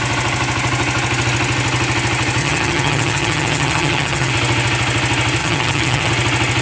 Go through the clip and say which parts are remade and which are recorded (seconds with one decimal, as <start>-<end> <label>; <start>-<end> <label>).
0.0-2.4 recorded; 2.4-4.3 remade; 4.3-5.4 recorded; 5.4-6.1 remade; 6.1-6.6 recorded